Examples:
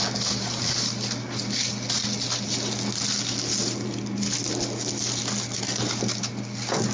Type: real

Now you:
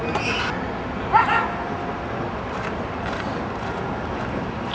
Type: real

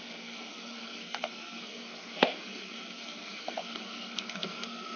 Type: fake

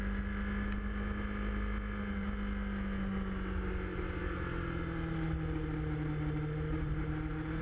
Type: real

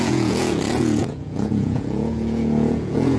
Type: fake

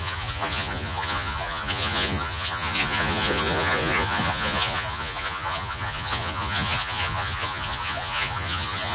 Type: fake